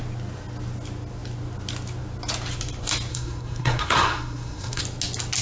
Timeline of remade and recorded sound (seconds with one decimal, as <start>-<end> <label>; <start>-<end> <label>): 0.0-3.1 recorded; 3.1-4.8 remade; 4.8-5.4 recorded